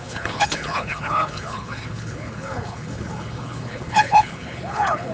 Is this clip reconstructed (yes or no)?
yes